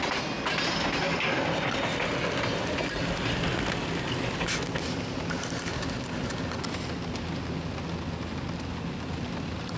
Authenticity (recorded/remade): recorded